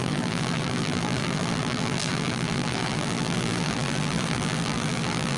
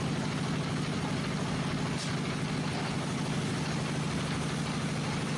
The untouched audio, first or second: second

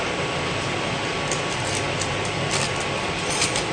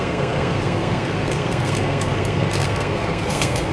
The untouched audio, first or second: first